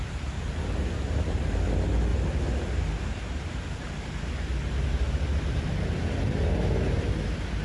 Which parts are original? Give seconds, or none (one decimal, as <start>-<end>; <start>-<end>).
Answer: 0.0-7.6